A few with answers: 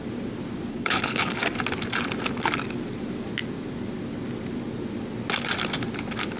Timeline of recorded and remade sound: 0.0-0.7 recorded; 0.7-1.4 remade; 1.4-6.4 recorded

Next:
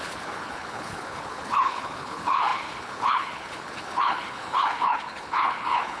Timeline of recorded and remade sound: 0.0-6.0 remade

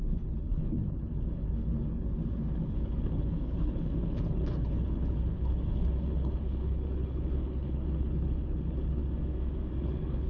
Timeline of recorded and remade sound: 0.0-9.0 remade; 9.0-9.8 recorded; 9.8-10.3 remade

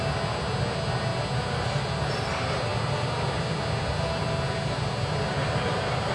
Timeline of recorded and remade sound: 0.0-6.1 recorded

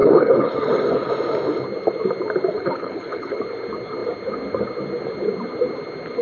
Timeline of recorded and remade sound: 0.0-1.1 remade; 1.1-2.5 recorded; 2.5-3.4 remade; 3.4-6.2 recorded